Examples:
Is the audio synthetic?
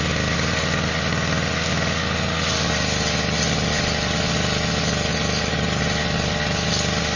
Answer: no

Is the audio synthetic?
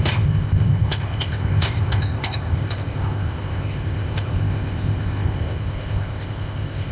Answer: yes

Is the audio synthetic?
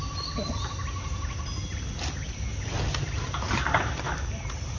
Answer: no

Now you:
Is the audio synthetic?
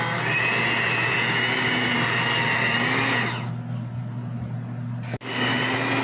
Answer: no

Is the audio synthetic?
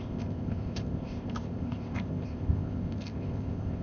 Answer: yes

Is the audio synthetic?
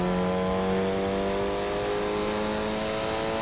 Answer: no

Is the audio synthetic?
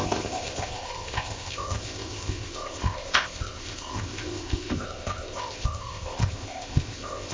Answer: yes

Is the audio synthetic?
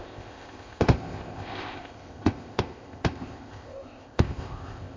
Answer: yes